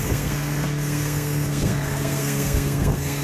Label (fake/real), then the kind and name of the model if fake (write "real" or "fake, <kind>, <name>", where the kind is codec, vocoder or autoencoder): fake, codec, SNAC